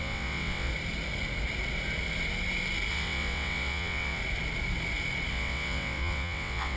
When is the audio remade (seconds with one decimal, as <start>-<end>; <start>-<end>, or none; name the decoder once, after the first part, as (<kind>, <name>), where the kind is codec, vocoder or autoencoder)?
0.0-0.7 (vocoder, WaveNeXt); 2.9-4.2; 5.3-6.8